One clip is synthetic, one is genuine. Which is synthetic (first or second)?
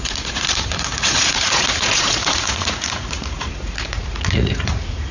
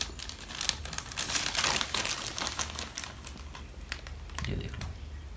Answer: first